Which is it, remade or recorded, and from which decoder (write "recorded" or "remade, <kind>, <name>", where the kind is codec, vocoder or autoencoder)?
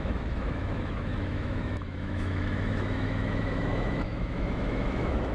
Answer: remade, autoencoder, DAC-VAE